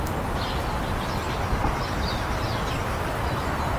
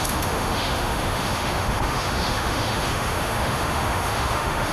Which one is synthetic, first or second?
second